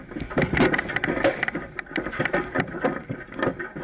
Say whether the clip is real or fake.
real